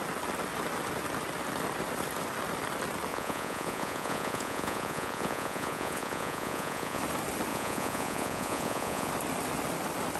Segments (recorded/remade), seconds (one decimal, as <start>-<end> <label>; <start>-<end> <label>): 0.0-3.1 recorded; 3.1-7.0 remade; 7.0-7.5 recorded; 7.5-9.1 remade; 9.1-10.2 recorded